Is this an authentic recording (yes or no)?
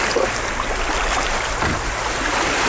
yes